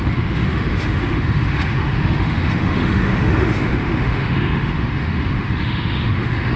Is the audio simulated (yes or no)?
yes